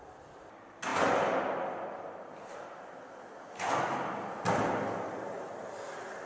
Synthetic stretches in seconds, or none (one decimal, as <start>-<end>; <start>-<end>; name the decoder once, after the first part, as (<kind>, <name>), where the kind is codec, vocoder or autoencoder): none